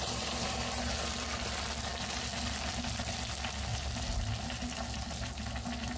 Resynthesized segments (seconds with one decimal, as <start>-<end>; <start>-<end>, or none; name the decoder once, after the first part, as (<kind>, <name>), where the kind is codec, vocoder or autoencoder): none